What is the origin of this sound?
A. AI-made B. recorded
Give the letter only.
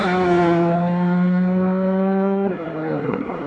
A